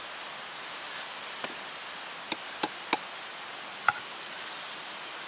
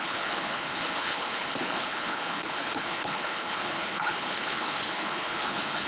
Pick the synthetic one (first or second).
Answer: second